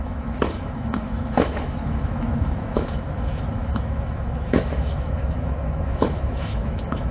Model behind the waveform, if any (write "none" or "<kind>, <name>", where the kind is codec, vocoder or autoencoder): autoencoder, DAC-VAE